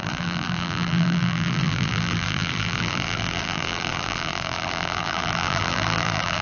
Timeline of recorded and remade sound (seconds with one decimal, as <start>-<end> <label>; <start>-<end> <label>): 0.0-6.4 remade